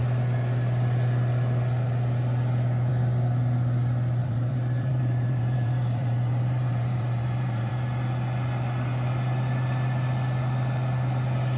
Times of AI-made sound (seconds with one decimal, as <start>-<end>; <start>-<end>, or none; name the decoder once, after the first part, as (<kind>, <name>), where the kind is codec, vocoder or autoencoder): 4.2-7.7 (vocoder, BigVGAN v2)